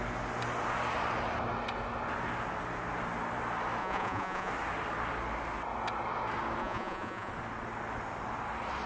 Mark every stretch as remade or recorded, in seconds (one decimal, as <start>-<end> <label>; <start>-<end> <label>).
0.0-3.8 recorded; 3.8-4.5 remade; 4.5-6.6 recorded; 6.6-7.3 remade; 7.3-8.9 recorded